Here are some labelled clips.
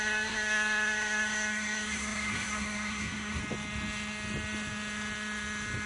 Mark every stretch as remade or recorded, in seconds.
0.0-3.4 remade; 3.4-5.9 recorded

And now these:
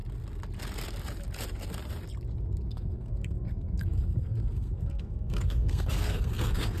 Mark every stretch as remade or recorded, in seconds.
0.0-2.7 recorded; 2.7-6.8 remade

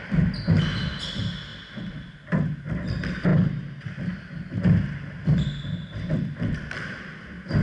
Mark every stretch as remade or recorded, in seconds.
0.0-7.6 recorded

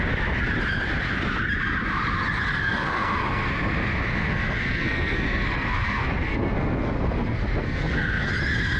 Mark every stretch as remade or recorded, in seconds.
0.0-2.5 recorded; 2.5-3.5 remade; 3.5-4.2 recorded; 4.2-8.3 remade; 8.3-8.8 recorded

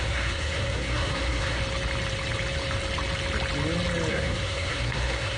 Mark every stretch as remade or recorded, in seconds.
0.0-1.6 remade; 1.6-4.1 recorded; 4.1-5.4 remade

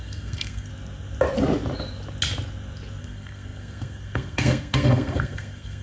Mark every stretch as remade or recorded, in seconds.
0.0-0.7 remade; 0.7-3.0 recorded; 3.0-5.8 remade